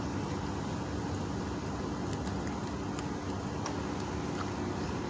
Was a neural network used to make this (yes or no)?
no